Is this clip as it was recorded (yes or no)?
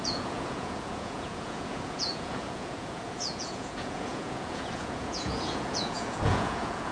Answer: no